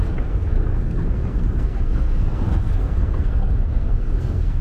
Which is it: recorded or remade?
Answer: remade